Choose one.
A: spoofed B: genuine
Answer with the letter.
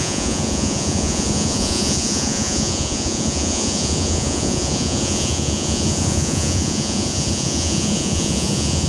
A